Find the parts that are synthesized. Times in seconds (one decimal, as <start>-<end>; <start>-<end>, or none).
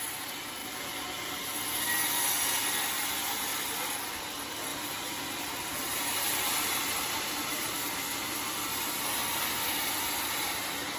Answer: 0.6-1.6; 4.7-8.4